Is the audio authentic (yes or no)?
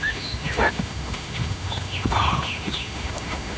no